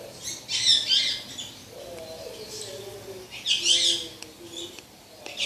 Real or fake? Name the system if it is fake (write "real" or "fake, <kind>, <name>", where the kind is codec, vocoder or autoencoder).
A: real